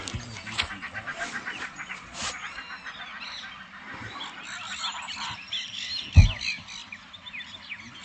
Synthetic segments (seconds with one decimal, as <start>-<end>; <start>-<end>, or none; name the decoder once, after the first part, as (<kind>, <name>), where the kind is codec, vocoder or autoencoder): 1.1-2.6 (vocoder, Vocos)